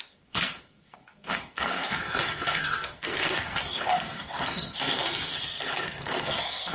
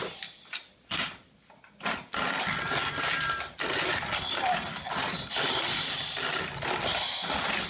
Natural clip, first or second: second